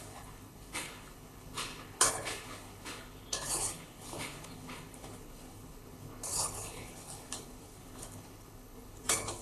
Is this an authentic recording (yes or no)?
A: no